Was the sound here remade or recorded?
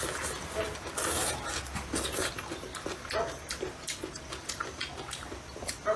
recorded